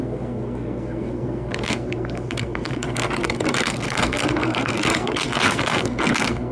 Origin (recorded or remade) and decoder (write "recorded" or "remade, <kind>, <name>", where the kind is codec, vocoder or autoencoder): remade, codec, SNAC